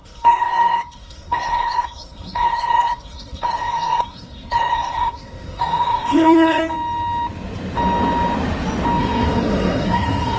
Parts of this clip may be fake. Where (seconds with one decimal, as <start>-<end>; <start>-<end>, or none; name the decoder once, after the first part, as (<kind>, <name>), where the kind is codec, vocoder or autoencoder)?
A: 0.0-6.6 (codec, SNAC); 9.0-10.4